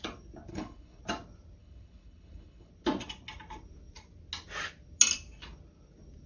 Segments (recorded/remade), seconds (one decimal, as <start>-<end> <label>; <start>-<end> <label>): 0.0-0.5 recorded; 0.5-1.0 remade; 1.0-1.6 recorded; 1.6-2.7 remade; 2.7-6.3 recorded